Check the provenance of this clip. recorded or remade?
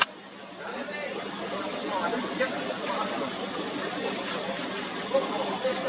recorded